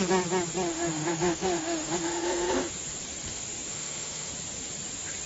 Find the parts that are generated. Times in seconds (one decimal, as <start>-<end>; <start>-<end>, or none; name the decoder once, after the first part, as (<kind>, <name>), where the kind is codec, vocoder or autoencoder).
0.7-2.7 (autoencoder, DAC-VAE); 3.7-4.3